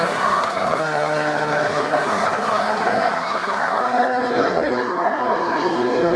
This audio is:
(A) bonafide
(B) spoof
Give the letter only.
B